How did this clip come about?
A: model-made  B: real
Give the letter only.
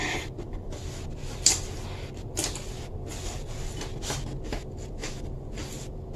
B